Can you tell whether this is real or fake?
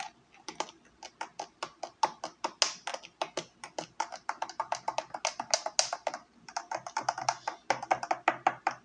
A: real